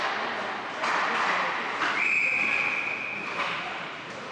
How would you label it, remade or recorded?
recorded